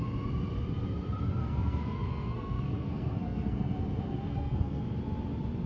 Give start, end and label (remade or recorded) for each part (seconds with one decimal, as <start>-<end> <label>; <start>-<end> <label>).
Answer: 0.0-1.4 recorded; 1.4-4.8 remade; 4.8-5.7 recorded